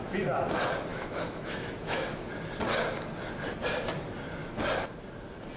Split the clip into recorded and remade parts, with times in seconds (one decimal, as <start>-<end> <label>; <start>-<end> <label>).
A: 0.0-0.9 recorded; 0.9-2.3 remade; 2.3-5.6 recorded

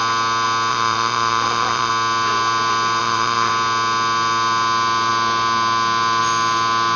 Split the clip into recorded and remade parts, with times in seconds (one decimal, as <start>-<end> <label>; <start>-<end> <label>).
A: 0.0-0.7 recorded; 0.7-1.9 remade; 1.9-3.0 recorded; 3.0-3.5 remade; 3.5-7.0 recorded